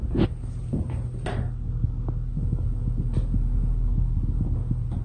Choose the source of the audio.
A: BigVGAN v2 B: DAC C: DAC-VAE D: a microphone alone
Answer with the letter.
D